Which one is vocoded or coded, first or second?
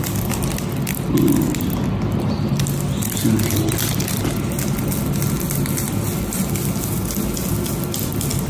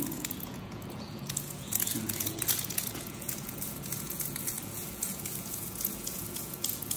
second